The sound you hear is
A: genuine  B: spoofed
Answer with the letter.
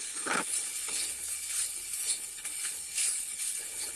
B